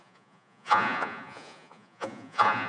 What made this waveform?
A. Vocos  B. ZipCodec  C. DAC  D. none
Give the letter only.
A